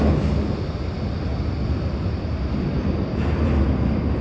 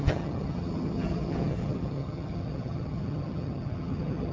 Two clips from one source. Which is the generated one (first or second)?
second